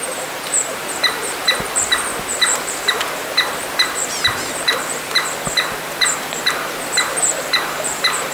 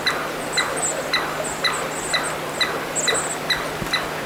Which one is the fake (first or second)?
first